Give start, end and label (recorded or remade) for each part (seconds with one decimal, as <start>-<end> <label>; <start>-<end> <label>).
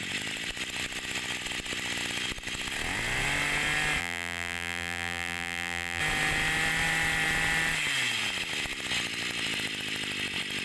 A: 0.0-4.0 recorded; 4.0-6.0 remade; 6.0-10.6 recorded